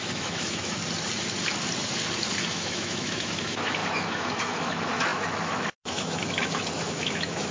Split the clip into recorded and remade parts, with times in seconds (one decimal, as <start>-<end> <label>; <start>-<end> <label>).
0.0-0.8 remade; 0.8-2.5 recorded; 2.5-7.5 remade